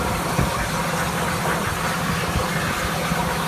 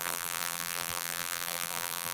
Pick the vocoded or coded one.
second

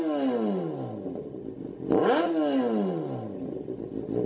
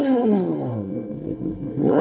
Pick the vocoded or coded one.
second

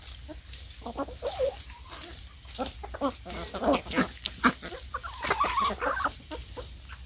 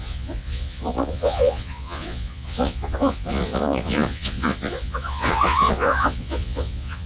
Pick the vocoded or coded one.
second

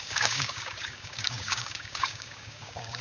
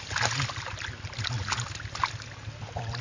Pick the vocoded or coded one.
first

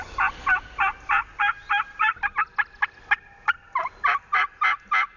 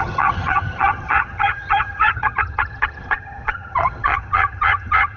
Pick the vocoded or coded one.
second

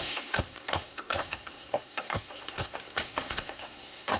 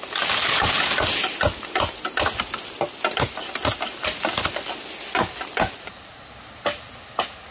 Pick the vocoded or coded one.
first